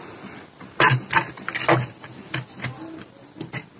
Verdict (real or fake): real